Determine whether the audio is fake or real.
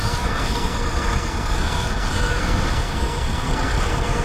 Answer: fake